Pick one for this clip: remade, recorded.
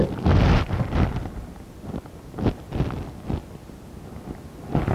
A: recorded